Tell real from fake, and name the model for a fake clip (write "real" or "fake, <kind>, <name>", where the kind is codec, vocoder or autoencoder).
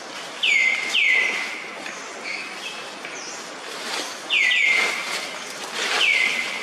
real